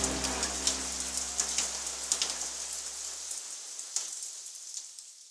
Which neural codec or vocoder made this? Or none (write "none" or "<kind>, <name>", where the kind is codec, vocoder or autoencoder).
none